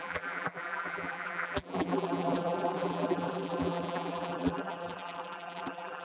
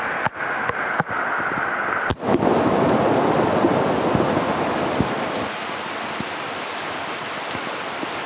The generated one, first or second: first